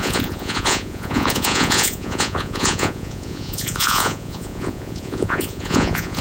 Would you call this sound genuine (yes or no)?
no